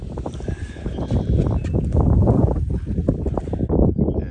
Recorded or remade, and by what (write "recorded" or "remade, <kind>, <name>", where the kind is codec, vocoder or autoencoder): recorded